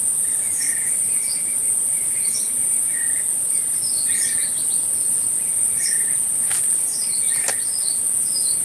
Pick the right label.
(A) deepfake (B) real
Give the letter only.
B